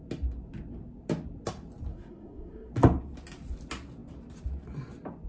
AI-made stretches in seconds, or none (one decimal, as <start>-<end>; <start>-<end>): 1.9-2.7

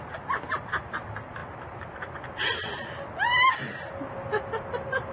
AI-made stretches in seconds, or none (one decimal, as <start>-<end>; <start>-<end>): none

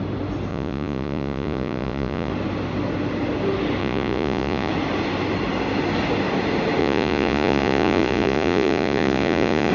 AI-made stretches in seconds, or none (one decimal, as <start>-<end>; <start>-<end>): 0.5-2.3; 3.8-4.7; 6.8-9.7

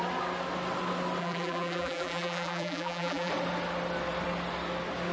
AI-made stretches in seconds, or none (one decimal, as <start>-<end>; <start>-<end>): 1.2-3.3

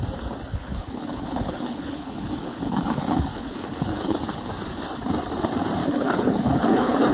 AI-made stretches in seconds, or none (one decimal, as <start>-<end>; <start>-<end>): 0.5-4.5; 5.8-7.1

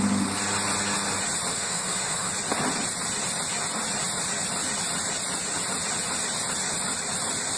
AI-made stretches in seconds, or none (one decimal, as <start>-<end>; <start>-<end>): 1.5-2.3

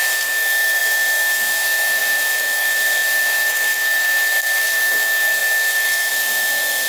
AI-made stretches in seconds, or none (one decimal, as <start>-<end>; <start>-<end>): 0.0-6.9

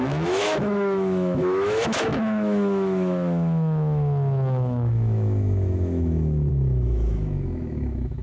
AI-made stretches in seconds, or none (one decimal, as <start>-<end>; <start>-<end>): 0.0-8.2